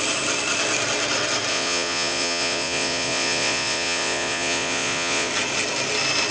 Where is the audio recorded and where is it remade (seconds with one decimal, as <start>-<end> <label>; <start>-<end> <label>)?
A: 0.0-1.5 recorded; 1.5-5.3 remade; 5.3-6.3 recorded